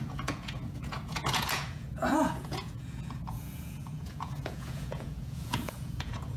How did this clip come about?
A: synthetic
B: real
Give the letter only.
A